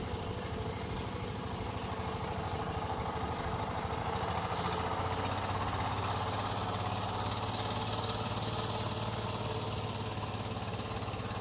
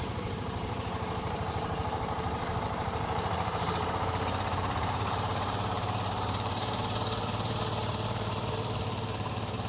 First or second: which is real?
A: first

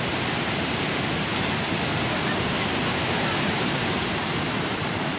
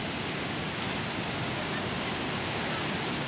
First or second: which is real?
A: second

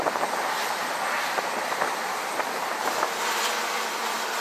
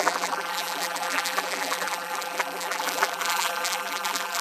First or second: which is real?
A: first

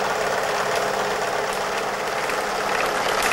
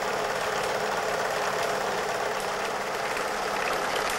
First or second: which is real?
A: first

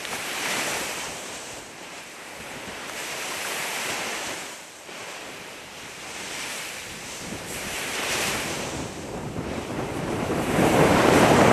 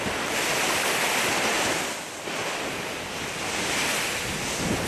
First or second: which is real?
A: second